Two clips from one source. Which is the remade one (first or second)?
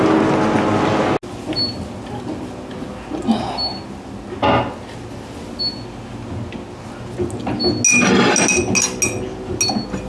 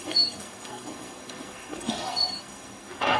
second